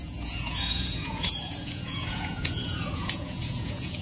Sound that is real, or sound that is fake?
fake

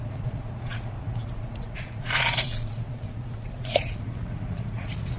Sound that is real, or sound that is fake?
fake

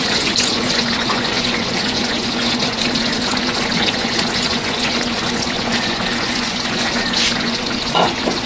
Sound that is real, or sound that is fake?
fake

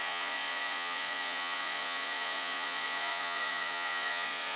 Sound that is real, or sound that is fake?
fake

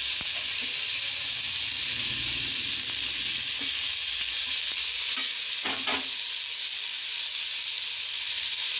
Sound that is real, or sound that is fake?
real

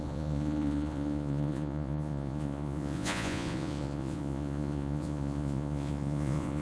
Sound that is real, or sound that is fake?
fake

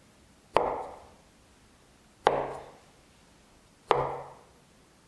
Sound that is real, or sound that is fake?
real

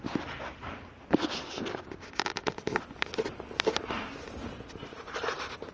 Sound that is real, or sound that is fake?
real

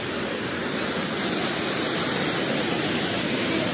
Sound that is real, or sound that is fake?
real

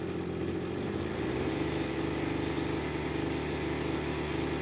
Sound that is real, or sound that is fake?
real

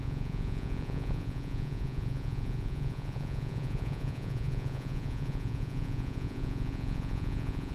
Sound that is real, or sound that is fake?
fake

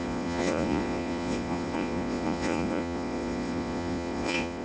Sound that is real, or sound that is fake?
fake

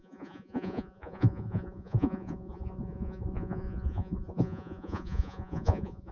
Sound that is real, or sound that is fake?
fake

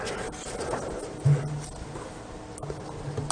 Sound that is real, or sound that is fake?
real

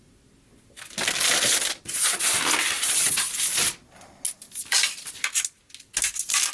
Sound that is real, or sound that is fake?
real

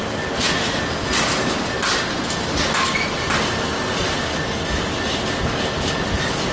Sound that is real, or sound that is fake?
real